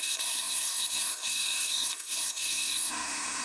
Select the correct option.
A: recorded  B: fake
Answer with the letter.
B